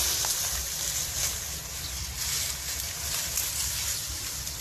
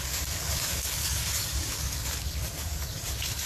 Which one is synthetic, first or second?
second